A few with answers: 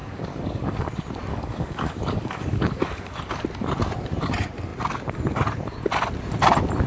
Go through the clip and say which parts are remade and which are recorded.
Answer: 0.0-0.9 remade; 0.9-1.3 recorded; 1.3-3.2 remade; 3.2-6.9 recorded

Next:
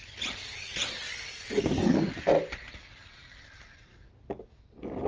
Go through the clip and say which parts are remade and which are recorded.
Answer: 0.0-3.9 recorded; 3.9-4.6 remade; 4.6-5.1 recorded

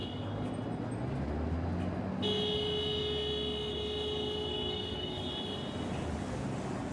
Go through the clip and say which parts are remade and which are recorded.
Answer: 0.0-0.5 remade; 0.5-4.5 recorded; 4.5-5.3 remade; 5.3-6.9 recorded

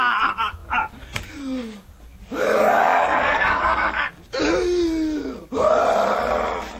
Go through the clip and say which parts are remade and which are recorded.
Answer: 0.0-5.8 remade; 5.8-6.8 recorded

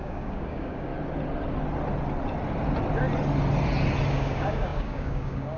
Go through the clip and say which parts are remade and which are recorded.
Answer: 0.0-0.9 remade; 0.9-4.1 recorded; 4.1-5.6 remade

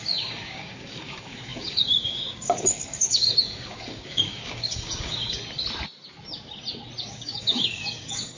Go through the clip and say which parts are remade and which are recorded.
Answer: 0.0-5.4 remade; 5.4-7.0 recorded; 7.0-8.4 remade